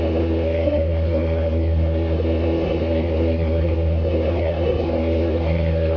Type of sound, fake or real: fake